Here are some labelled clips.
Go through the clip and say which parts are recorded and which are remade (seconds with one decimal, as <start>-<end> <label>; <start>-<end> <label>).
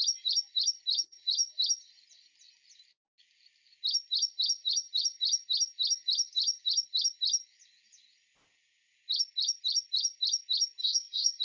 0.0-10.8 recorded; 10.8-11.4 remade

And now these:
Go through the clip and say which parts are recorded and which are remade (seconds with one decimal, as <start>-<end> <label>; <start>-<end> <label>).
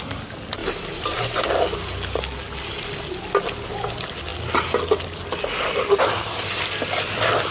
0.0-0.6 recorded; 0.6-1.4 remade; 1.4-7.5 recorded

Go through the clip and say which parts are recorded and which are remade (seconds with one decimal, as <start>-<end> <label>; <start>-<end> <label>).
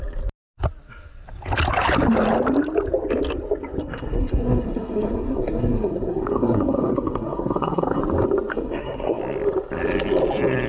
0.0-3.8 recorded; 3.8-8.0 remade; 8.0-8.5 recorded; 8.5-9.2 remade; 9.2-10.7 recorded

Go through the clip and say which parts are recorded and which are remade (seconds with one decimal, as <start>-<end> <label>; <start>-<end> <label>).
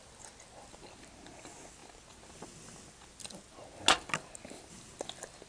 0.0-5.5 recorded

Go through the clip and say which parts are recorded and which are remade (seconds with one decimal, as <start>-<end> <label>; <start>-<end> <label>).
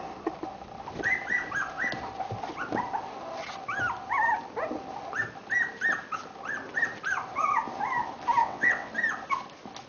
0.0-8.4 recorded; 8.4-8.9 remade; 8.9-9.9 recorded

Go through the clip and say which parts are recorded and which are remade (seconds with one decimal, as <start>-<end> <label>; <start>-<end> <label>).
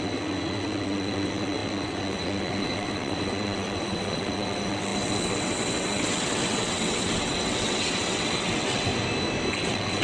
0.0-8.9 remade; 8.9-9.5 recorded; 9.5-10.0 remade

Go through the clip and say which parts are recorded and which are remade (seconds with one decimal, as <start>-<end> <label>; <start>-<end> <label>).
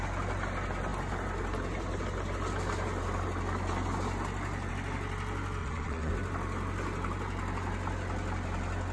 0.0-5.6 recorded; 5.6-6.1 remade; 6.1-8.9 recorded